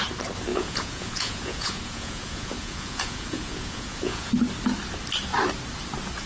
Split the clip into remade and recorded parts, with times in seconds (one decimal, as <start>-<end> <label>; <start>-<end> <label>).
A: 0.0-0.5 recorded; 0.5-4.3 remade; 4.3-6.3 recorded

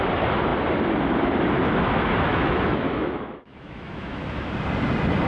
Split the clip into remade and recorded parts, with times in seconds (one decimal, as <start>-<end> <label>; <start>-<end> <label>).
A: 0.0-2.3 recorded; 2.3-4.5 remade; 4.5-5.3 recorded